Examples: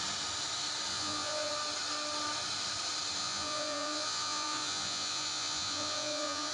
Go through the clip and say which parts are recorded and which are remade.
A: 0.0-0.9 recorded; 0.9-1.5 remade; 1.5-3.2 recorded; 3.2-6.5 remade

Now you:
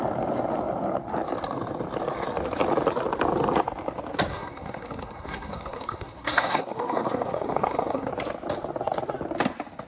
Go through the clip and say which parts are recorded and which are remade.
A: 0.0-4.3 recorded; 4.3-8.1 remade; 8.1-9.9 recorded